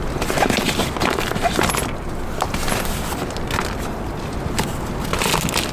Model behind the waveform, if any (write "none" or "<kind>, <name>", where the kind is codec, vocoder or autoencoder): none